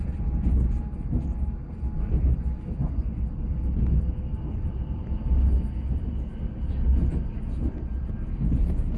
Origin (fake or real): real